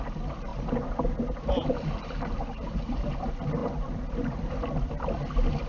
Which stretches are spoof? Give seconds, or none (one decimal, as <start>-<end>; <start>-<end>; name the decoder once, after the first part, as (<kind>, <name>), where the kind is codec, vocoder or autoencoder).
0.5-3.0 (vocoder, BigVGAN v2); 3.6-4.5